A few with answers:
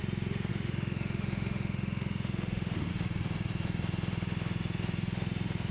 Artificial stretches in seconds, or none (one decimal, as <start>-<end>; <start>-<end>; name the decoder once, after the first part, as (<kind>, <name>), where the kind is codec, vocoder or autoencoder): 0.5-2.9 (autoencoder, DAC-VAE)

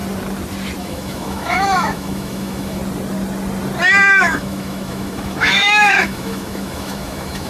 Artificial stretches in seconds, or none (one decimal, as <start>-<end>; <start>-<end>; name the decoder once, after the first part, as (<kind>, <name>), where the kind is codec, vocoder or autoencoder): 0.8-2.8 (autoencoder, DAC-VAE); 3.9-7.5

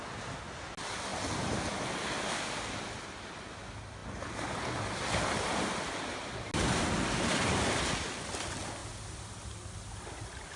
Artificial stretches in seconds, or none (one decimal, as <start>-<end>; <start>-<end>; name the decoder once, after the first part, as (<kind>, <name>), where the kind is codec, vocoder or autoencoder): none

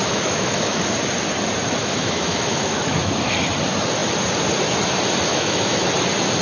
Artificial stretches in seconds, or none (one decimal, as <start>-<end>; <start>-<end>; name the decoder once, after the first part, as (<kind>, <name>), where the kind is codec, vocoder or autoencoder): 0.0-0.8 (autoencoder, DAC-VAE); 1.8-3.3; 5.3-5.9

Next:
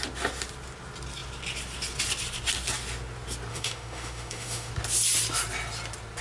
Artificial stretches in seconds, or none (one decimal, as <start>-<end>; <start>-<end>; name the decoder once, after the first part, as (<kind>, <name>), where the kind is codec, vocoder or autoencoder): 3.5-4.7 (autoencoder, DAC-VAE)